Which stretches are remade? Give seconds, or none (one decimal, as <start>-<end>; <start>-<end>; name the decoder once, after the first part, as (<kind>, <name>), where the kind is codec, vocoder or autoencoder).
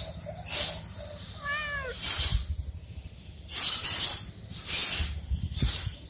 none